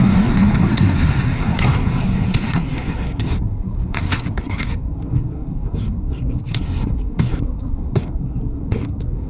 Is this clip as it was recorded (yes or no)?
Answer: no